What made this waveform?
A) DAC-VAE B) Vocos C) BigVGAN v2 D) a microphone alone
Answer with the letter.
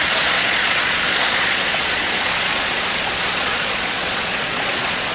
B